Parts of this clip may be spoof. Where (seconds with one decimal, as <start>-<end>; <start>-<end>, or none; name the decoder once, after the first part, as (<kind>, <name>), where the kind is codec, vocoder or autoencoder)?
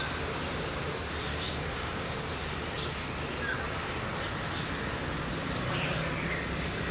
1.3-2.2 (codec, DAC)